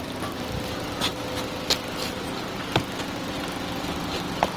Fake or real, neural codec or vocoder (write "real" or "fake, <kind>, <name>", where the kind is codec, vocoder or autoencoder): real